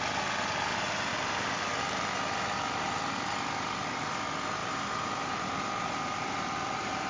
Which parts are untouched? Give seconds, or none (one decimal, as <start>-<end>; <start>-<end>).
0.0-1.1; 1.8-4.6